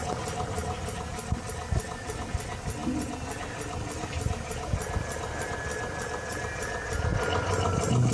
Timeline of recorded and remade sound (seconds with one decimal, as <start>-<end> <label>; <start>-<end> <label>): 0.0-8.1 recorded